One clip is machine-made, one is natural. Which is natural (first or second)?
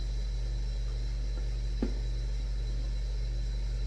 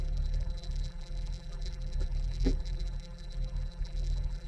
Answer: first